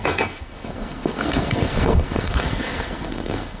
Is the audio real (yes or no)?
no